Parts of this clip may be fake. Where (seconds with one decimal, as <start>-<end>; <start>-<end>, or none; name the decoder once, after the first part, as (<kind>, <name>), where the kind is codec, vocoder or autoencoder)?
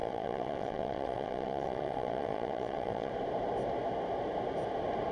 0.0-3.1 (vocoder, WaveNeXt)